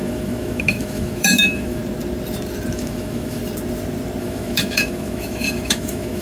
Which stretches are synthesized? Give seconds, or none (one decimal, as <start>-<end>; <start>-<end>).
0.0-1.8; 2.7-3.4; 4.2-6.2